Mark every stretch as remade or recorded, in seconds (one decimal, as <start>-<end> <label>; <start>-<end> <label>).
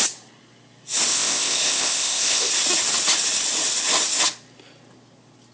0.0-1.1 recorded; 1.1-2.5 remade; 2.5-5.5 recorded